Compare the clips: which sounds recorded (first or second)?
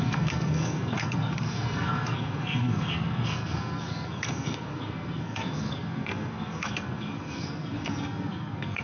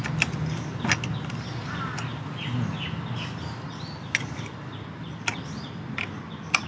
second